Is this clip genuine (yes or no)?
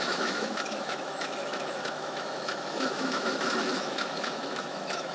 no